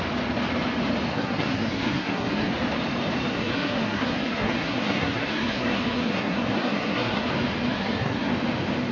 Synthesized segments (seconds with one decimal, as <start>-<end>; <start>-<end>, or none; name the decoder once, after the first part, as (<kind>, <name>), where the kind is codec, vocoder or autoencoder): 1.1-2.5 (codec, SNAC); 3.3-7.3; 7.7-8.3